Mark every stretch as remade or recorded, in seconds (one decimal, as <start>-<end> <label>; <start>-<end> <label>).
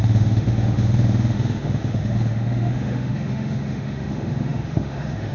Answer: 0.0-5.3 remade